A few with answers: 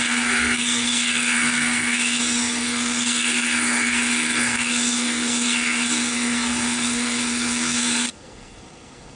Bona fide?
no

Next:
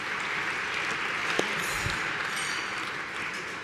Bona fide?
yes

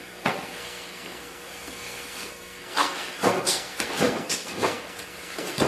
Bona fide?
no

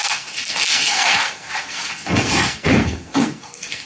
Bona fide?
no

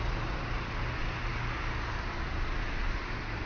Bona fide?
yes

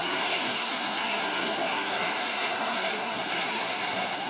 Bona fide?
no